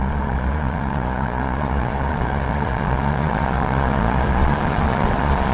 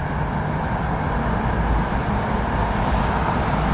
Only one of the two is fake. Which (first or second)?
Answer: first